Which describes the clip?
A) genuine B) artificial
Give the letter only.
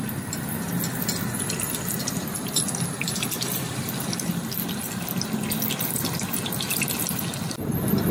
A